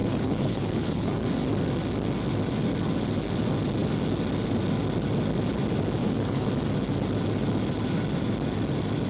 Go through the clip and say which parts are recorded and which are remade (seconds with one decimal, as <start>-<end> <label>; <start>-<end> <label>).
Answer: 0.0-1.2 remade; 1.2-6.0 recorded; 6.0-6.5 remade; 6.5-9.1 recorded